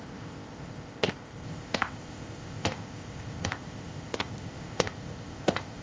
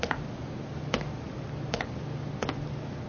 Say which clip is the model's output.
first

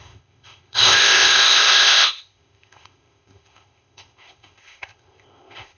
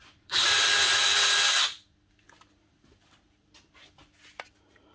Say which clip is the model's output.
first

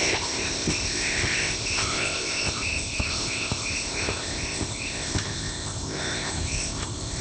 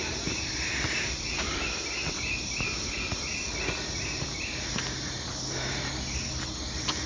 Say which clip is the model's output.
first